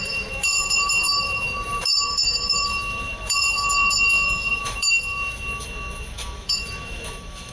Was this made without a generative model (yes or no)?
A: no